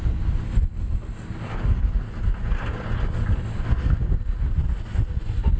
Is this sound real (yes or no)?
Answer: yes